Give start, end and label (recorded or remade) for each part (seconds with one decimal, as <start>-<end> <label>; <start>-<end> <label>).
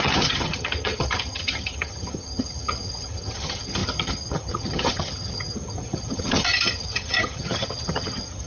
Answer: 0.0-8.5 remade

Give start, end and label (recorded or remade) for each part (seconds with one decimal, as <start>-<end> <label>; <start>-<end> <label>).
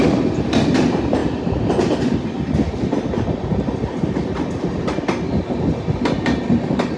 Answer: 0.0-7.0 recorded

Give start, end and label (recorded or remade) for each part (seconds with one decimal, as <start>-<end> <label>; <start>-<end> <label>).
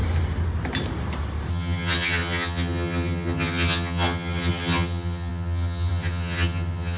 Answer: 0.0-1.5 recorded; 1.5-7.0 remade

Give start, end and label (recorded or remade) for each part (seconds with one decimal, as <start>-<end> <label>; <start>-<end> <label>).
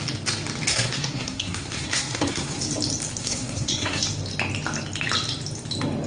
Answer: 0.0-0.7 recorded; 0.7-2.6 remade; 2.6-3.2 recorded; 3.2-4.0 remade; 4.0-6.1 recorded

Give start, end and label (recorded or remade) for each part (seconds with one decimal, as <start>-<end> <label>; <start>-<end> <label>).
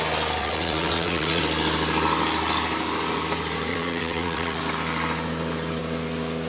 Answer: 0.0-0.4 recorded; 0.4-1.4 remade; 1.4-3.7 recorded; 3.7-4.6 remade; 4.6-6.5 recorded